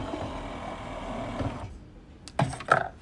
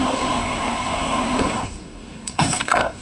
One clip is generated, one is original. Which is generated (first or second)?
second